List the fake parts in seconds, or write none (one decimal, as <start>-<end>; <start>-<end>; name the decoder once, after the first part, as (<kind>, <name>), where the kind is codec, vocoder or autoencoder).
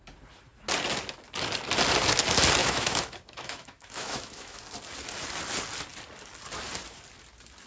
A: 2.6-4.6 (autoencoder, DAC-VAE)